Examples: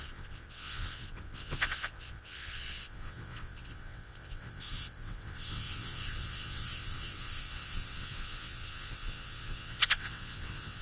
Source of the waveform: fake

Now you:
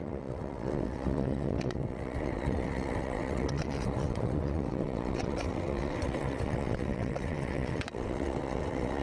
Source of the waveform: fake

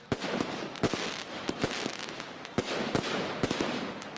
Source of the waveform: real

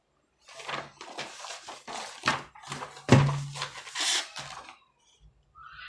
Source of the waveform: real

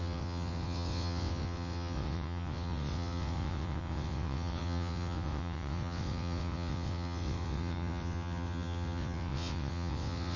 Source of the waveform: fake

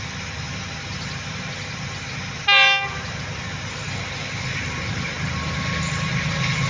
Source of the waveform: real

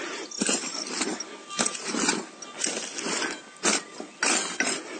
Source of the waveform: real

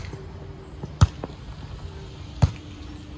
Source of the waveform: real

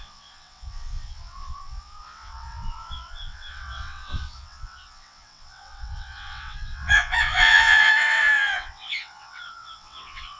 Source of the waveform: fake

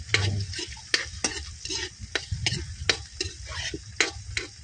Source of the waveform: real